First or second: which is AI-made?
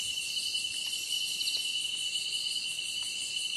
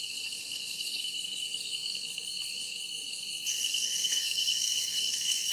second